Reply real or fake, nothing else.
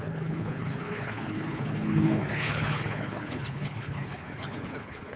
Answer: fake